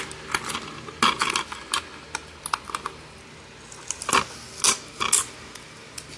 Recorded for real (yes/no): yes